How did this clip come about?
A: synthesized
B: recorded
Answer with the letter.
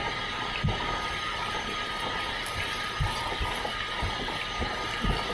B